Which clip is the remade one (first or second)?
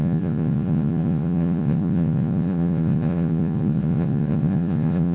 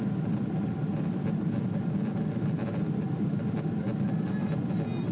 first